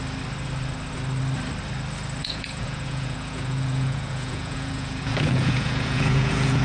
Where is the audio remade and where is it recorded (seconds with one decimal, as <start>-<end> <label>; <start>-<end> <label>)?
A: 0.0-2.2 recorded; 2.2-6.6 remade

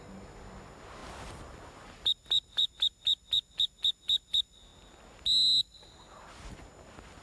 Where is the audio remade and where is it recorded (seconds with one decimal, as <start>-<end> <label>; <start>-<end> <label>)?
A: 0.0-7.2 recorded

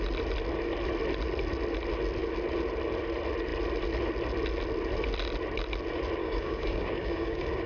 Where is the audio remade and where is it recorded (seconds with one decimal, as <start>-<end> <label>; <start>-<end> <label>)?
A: 0.0-6.2 recorded; 6.2-7.7 remade

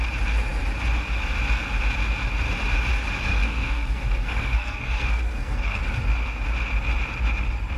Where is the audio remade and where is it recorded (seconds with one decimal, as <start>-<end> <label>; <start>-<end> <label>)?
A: 0.0-3.3 recorded; 3.3-5.8 remade; 5.8-7.8 recorded

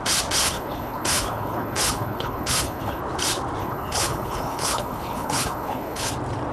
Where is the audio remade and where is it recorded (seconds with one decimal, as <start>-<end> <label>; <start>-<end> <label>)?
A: 0.0-0.4 recorded; 0.4-3.0 remade; 3.0-3.6 recorded; 3.6-6.1 remade; 6.1-6.5 recorded

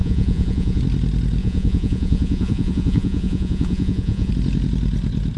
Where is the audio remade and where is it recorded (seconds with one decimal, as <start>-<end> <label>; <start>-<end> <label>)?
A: 0.0-0.8 remade; 0.8-1.4 recorded; 1.4-4.3 remade; 4.3-5.4 recorded

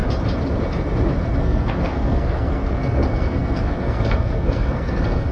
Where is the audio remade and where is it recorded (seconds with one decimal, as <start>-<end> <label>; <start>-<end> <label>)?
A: 0.0-1.4 recorded; 1.4-5.3 remade

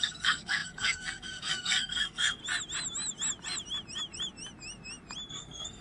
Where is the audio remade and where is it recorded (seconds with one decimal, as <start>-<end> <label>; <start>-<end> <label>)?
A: 0.0-2.4 remade; 2.4-5.3 recorded; 5.3-5.8 remade